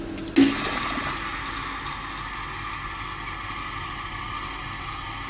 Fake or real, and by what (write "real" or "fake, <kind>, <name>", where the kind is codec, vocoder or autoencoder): real